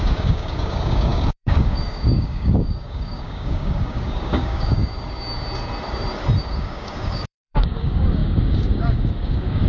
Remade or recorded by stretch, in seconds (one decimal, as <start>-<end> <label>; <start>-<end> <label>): 0.0-4.9 remade; 4.9-6.5 recorded; 6.5-9.7 remade